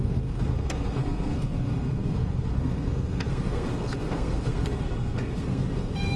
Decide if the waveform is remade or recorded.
remade